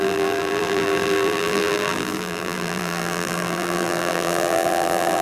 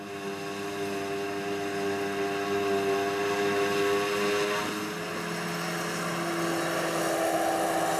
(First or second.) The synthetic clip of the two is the first